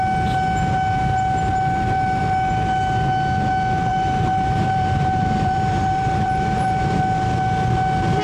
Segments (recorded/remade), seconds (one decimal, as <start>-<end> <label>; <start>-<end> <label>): 0.0-1.5 recorded; 1.5-2.2 remade; 2.2-3.9 recorded; 3.9-7.0 remade; 7.0-8.2 recorded